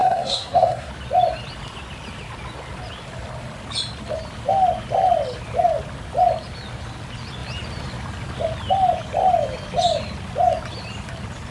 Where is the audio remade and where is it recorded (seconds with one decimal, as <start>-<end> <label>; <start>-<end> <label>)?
0.0-0.9 remade; 0.9-11.5 recorded